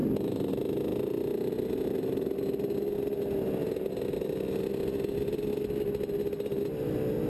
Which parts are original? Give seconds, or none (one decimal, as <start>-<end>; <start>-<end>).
0.0-7.3